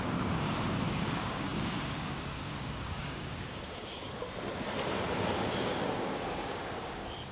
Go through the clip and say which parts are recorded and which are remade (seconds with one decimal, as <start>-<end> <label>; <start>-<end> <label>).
0.0-4.2 remade; 4.2-5.5 recorded; 5.5-7.3 remade